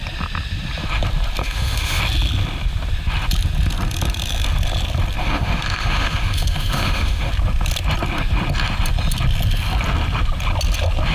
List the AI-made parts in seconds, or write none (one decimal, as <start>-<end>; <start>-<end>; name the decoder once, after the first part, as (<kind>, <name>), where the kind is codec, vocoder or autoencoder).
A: 1.4-2.0 (autoencoder, DAC-VAE); 5.2-7.3